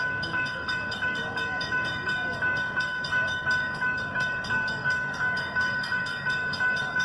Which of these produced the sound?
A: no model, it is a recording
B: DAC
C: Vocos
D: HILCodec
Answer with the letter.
B